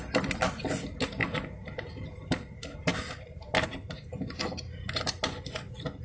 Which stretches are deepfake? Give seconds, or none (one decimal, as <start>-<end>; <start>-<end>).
none